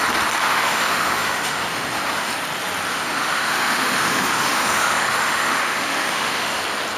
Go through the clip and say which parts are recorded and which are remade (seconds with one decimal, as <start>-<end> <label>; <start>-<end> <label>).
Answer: 0.0-0.4 recorded; 0.4-2.3 remade; 2.3-2.9 recorded; 2.9-6.6 remade; 6.6-7.0 recorded